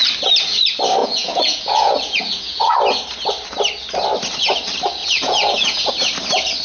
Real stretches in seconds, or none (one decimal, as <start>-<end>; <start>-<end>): 0.0-1.0; 2.8-5.0; 5.9-6.6